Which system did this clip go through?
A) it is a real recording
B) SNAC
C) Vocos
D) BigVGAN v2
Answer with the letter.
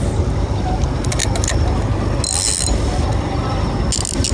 A